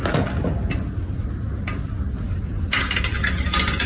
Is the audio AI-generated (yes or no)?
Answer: no